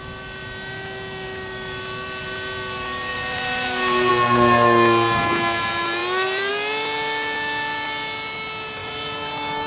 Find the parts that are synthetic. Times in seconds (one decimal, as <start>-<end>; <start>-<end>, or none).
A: 3.1-4.1; 8.8-9.7